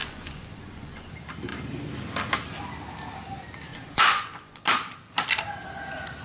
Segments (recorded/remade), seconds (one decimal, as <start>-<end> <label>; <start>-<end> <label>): 0.0-1.1 remade; 1.1-3.7 recorded; 3.7-4.6 remade; 4.6-6.2 recorded